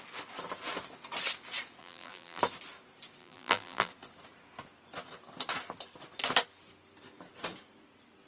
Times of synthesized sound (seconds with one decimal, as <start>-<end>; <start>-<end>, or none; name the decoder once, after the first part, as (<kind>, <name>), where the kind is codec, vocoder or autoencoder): 1.8-2.4 (vocoder, BigVGAN v2); 3.2-3.9